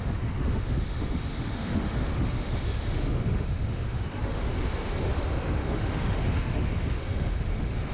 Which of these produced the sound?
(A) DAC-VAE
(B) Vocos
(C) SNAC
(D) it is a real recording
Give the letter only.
A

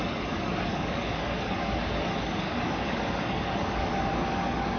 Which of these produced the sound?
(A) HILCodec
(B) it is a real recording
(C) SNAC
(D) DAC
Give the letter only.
D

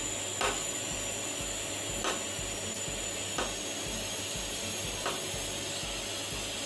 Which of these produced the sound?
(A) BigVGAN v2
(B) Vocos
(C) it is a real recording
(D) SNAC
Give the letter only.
C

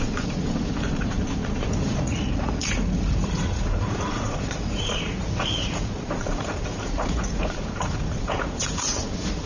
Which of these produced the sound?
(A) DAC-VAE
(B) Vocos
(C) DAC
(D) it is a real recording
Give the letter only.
B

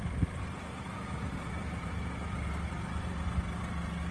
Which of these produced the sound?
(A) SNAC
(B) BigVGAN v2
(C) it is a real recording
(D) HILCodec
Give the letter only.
B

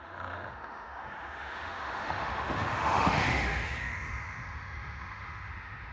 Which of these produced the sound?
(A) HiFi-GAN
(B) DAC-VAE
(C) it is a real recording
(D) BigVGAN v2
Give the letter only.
B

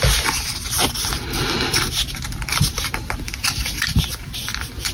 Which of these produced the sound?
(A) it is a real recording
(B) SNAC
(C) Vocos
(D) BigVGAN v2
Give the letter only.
D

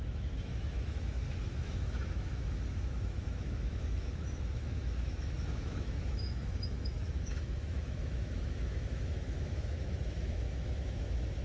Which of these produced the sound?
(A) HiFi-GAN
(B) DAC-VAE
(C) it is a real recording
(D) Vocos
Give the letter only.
B